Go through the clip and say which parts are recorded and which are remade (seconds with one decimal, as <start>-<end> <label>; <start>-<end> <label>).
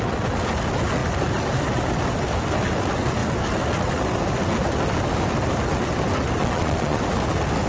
0.0-6.4 recorded; 6.4-7.0 remade; 7.0-7.7 recorded